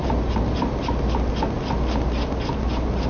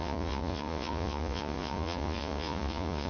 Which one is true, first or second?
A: first